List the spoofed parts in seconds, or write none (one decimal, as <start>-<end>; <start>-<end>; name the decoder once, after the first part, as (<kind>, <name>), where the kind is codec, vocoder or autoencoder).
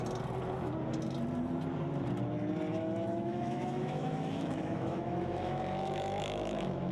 2.7-6.9 (autoencoder, DAC-VAE)